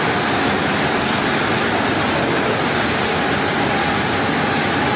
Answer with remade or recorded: remade